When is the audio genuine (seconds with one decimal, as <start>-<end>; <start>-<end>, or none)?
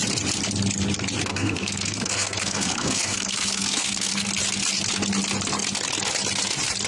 0.0-1.3; 4.1-6.9